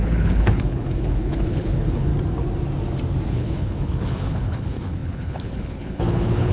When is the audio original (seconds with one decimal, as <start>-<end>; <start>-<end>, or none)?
2.1-3.3

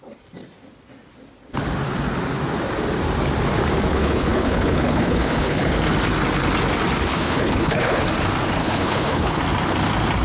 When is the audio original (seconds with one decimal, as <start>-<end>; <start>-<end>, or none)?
0.0-3.9; 5.7-7.1; 8.0-8.6; 9.4-10.2

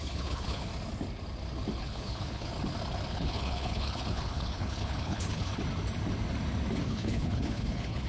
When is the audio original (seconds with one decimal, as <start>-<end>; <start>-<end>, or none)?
0.7-1.8; 2.5-3.1; 5.5-6.8

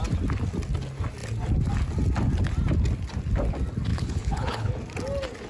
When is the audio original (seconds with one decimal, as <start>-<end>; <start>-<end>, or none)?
0.0-3.9; 4.7-5.5

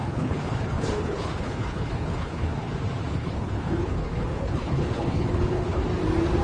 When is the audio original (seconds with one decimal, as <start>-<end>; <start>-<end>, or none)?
2.7-3.1; 5.8-6.4

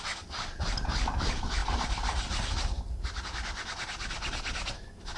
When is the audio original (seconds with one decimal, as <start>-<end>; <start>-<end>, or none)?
0.0-5.2

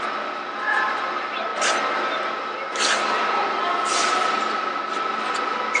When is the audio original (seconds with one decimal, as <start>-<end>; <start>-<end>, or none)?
0.0-5.8

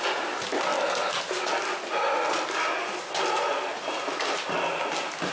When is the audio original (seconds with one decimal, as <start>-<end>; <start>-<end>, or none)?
0.0-5.3